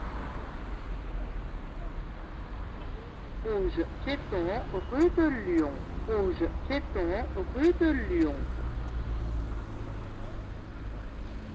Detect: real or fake real